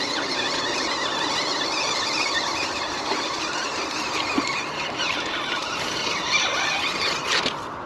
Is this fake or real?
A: fake